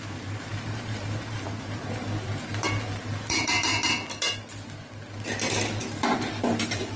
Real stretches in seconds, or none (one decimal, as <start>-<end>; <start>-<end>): 3.7-5.8